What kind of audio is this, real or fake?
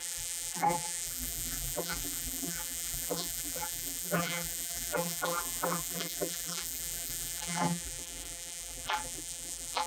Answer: fake